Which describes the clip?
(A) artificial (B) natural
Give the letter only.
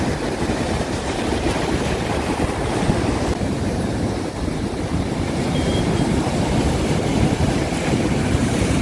A